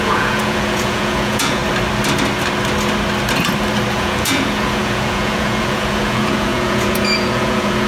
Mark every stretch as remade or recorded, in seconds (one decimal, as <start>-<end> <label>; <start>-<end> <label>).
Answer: 0.0-1.6 remade; 1.6-3.9 recorded; 3.9-7.9 remade